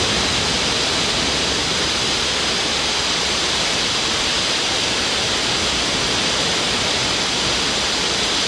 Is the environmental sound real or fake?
real